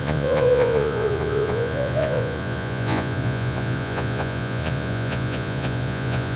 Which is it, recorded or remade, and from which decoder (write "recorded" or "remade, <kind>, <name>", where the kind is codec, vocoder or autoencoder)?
remade, vocoder, Vocos